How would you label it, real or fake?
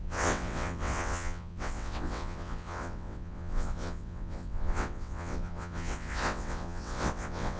fake